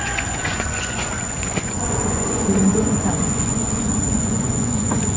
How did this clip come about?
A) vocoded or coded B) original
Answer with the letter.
A